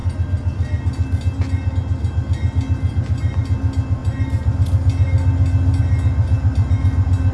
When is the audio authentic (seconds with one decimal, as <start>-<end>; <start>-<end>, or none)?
0.0-7.3